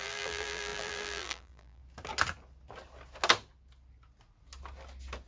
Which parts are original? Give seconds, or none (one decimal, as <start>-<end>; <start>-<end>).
1.8-5.3